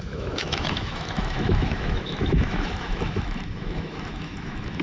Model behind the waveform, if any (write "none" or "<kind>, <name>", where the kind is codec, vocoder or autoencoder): autoencoder, DAC-VAE